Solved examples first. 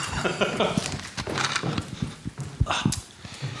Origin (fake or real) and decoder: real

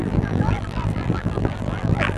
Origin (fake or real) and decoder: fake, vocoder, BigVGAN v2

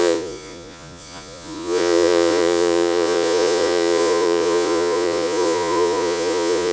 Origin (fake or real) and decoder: fake, vocoder, Vocos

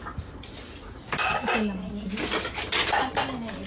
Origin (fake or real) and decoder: real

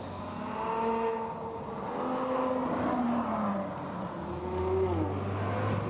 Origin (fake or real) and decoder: real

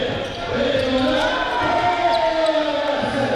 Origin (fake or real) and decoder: real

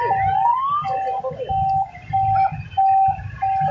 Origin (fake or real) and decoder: real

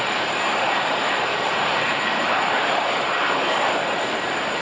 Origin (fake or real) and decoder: fake, vocoder, BigVGAN v2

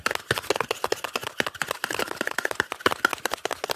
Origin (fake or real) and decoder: real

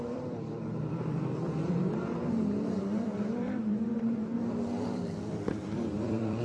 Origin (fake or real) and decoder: fake, vocoder, BigVGAN v2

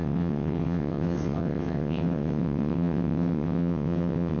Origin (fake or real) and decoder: fake, vocoder, WaveNeXt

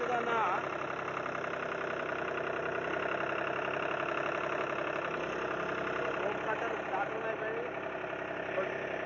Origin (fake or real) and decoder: real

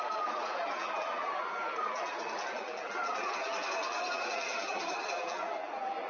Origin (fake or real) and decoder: fake, vocoder, BigVGAN v2